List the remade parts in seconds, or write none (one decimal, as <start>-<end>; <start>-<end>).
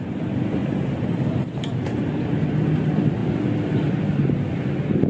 none